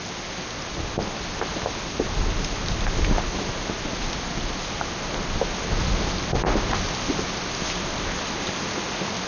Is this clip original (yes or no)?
yes